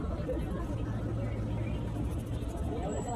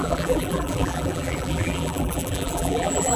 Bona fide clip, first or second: first